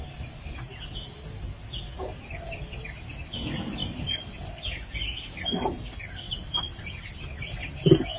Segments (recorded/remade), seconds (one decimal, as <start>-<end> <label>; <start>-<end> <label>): 0.0-8.2 recorded